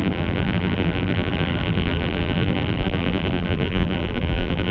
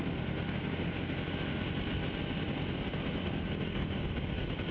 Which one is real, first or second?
second